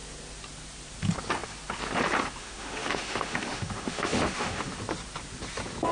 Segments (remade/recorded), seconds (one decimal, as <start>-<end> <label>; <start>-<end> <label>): 0.0-2.4 recorded; 2.4-4.7 remade; 4.7-5.9 recorded